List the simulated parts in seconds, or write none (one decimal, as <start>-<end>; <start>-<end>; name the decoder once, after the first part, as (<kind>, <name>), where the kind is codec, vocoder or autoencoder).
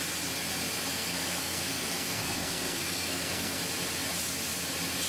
0.9-3.6 (codec, SNAC)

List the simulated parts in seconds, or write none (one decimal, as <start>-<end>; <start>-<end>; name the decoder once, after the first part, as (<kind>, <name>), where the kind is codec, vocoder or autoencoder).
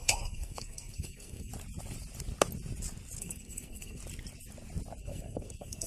0.0-1.5 (codec, SNAC); 3.2-4.0; 5.0-5.9